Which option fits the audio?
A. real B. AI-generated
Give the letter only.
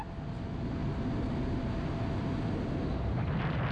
A